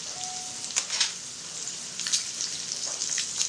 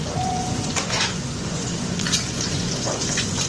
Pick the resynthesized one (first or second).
second